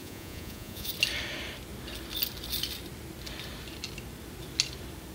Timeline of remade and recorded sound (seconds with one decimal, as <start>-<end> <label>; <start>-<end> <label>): 0.0-0.9 remade; 0.9-5.1 recorded